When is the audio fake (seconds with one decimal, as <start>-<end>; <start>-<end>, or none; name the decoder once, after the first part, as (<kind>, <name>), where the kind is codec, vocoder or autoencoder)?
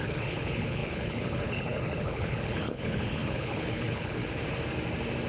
0.0-4.2 (codec, HILCodec)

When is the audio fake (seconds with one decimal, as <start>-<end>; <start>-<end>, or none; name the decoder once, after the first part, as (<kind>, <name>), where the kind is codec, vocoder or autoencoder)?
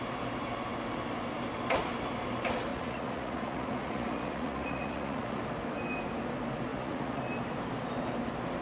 2.7-5.4 (vocoder, Vocos); 6.7-7.2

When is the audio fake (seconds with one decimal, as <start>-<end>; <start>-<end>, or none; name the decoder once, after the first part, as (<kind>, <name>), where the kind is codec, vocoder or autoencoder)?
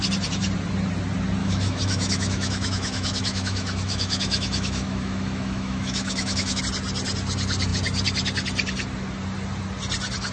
1.4-6.6 (autoencoder, DAC-VAE)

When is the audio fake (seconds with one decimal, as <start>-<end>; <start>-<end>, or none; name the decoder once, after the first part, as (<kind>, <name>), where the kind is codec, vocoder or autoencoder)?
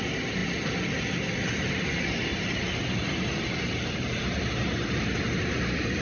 none